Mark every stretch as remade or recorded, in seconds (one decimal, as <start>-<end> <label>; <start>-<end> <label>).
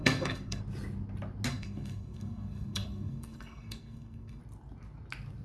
0.0-0.6 remade; 0.6-1.5 recorded; 1.5-4.4 remade; 4.4-5.4 recorded